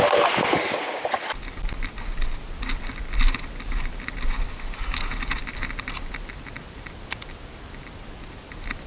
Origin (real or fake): real